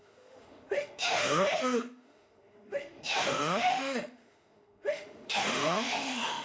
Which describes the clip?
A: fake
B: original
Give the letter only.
A